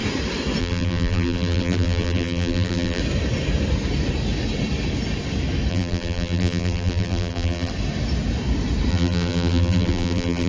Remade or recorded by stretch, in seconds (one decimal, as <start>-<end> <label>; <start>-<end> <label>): 0.0-0.6 recorded; 0.6-3.0 remade; 3.0-5.7 recorded; 5.7-7.7 remade; 7.7-8.9 recorded; 8.9-10.5 remade